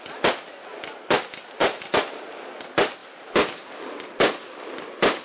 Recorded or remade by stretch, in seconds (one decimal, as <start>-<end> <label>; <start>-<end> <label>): 0.0-1.6 recorded; 1.6-2.1 remade; 2.1-5.2 recorded